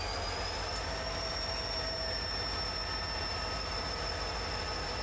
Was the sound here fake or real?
fake